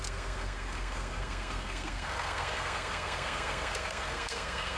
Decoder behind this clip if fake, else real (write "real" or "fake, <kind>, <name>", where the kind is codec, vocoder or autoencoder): fake, codec, SNAC